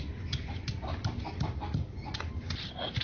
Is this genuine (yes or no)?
yes